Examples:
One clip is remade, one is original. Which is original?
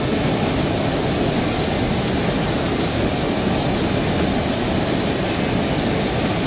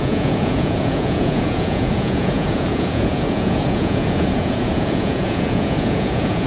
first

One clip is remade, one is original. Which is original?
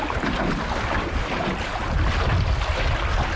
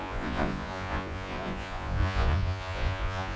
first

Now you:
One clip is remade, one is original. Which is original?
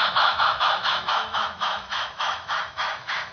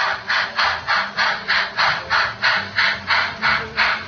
second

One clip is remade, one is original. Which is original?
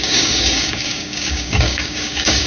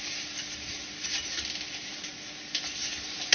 second